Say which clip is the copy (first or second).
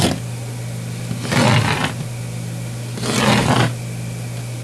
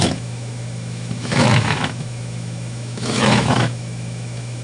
second